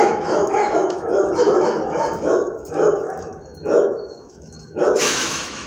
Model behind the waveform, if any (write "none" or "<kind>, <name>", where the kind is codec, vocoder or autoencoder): autoencoder, DAC-VAE